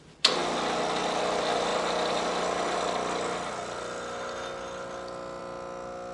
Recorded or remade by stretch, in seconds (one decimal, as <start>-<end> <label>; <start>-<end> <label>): 0.0-6.1 recorded